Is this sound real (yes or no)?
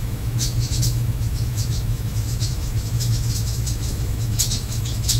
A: no